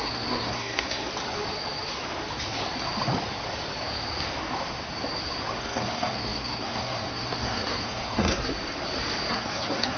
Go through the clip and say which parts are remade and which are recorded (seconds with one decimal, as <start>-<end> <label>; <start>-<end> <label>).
0.0-1.1 remade; 1.1-5.6 recorded; 5.6-8.5 remade; 8.5-9.3 recorded; 9.3-10.0 remade